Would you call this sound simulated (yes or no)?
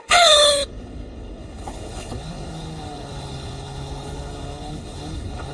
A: yes